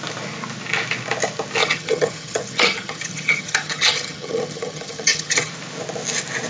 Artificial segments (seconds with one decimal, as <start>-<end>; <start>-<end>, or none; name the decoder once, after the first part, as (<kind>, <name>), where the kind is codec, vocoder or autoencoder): 1.6-5.5 (vocoder, HiFi-GAN)